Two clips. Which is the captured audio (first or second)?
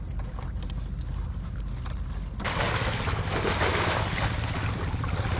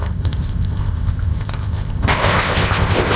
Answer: first